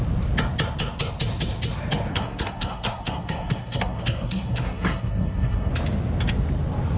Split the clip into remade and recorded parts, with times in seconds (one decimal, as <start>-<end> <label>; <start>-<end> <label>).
0.0-2.1 recorded; 2.1-5.7 remade; 5.7-7.0 recorded